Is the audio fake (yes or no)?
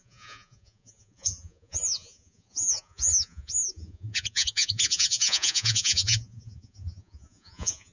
yes